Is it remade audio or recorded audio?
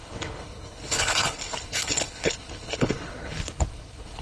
remade